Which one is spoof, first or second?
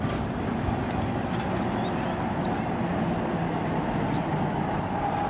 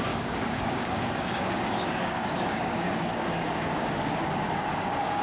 second